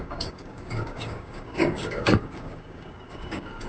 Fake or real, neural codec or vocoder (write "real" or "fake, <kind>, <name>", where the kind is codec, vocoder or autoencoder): fake, codec, DAC